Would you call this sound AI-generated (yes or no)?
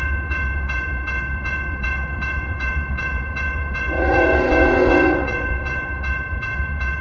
yes